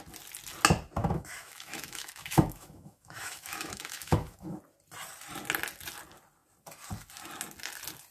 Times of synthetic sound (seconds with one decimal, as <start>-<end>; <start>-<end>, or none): 1.0-4.6